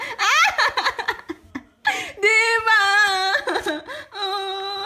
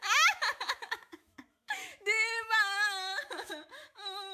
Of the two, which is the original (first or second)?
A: first